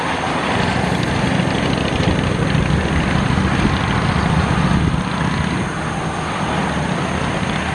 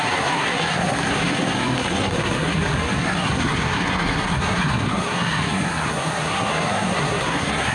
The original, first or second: first